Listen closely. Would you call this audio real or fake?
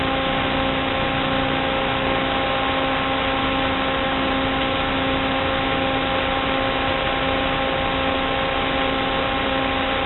real